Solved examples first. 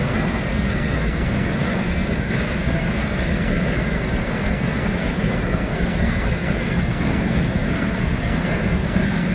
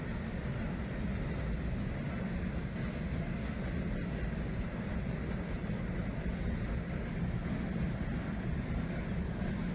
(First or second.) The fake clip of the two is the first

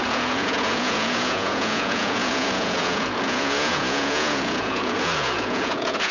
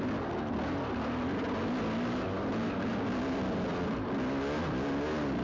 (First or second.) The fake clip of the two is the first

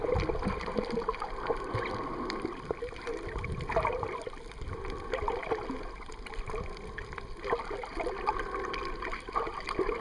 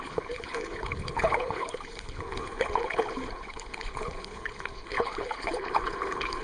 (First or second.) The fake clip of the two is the second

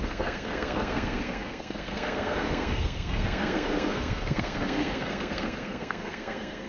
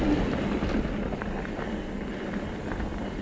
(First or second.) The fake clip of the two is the first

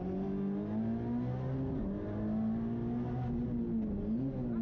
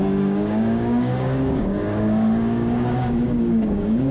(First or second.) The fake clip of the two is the second